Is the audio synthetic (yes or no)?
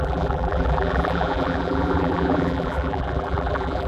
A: yes